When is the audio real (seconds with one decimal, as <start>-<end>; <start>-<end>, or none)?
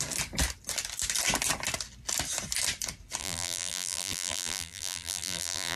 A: 0.0-3.2